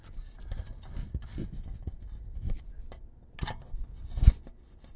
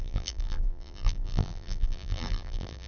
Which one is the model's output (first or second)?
second